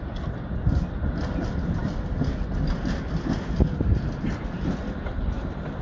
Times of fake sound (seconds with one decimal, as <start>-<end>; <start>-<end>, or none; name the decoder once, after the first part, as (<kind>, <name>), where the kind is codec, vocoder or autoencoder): none